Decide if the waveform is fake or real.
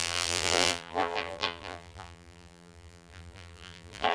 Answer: fake